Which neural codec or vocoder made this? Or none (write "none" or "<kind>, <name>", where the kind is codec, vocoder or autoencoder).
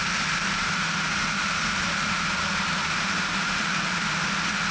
vocoder, BigVGAN v2